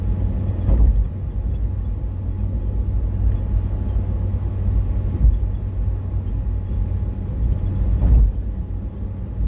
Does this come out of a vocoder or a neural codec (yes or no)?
no